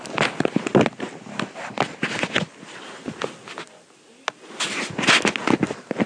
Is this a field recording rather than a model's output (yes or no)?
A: yes